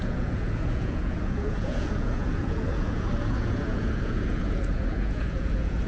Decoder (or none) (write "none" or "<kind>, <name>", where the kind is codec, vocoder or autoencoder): vocoder, Vocos